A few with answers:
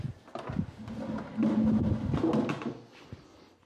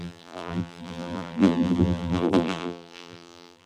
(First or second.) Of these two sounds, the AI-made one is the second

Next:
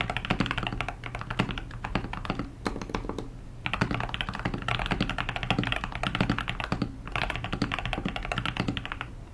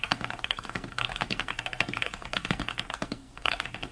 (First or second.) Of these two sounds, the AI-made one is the second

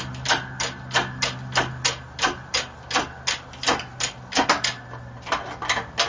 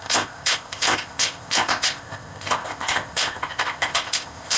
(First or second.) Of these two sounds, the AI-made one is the second